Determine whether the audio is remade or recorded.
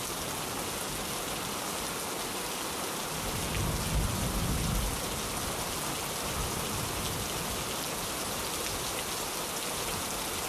recorded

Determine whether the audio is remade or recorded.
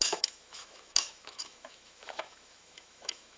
remade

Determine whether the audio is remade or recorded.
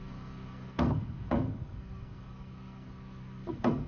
remade